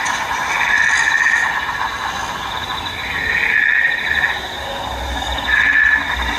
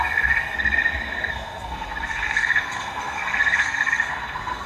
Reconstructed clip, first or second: second